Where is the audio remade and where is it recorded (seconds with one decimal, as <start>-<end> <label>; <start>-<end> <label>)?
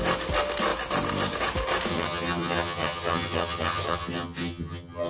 0.0-1.9 recorded; 1.9-5.1 remade